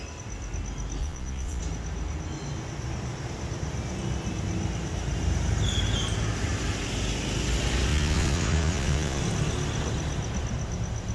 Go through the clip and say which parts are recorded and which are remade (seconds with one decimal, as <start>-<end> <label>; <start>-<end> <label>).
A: 0.0-1.0 recorded; 1.0-1.6 remade; 1.6-7.9 recorded; 7.9-9.2 remade; 9.2-11.1 recorded